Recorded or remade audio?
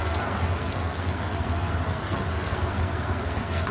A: remade